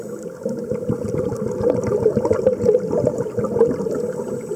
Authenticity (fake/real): real